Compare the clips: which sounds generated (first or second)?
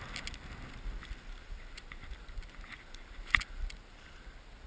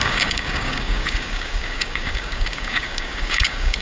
second